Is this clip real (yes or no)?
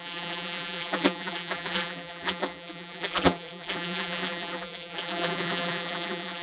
no